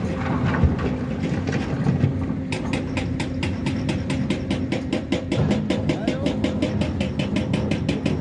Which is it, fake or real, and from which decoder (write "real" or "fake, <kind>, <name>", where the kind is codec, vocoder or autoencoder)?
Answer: real